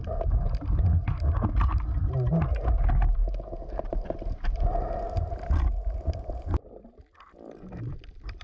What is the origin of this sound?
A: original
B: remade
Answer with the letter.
A